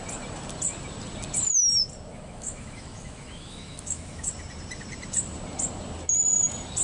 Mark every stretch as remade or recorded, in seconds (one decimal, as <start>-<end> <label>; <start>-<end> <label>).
0.0-2.1 recorded; 2.1-4.3 remade; 4.3-6.8 recorded